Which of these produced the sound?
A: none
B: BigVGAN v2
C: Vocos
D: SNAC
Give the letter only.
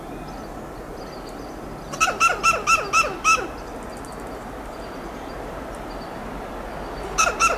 A